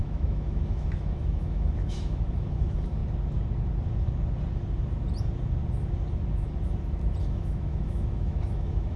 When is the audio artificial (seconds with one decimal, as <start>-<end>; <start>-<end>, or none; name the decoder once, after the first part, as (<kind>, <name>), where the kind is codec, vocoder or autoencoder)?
0.0-3.0 (autoencoder, DAC-VAE); 7.2-9.0